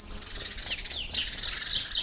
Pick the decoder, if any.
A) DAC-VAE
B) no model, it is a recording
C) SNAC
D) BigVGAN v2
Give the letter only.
B